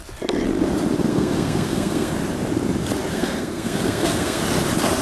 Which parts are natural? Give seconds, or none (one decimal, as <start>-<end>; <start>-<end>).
0.0-1.1; 2.1-3.1; 4.4-5.0